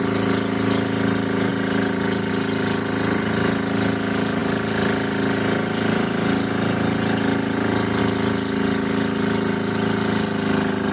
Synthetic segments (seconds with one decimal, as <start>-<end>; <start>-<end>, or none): none